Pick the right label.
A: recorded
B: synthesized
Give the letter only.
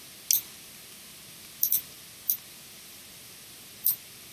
A